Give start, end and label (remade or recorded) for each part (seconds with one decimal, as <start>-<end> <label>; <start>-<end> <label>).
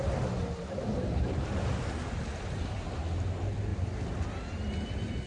0.0-5.3 recorded